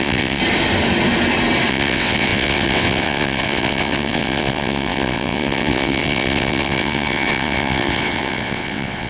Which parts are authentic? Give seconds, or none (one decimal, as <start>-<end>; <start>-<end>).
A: 0.4-1.7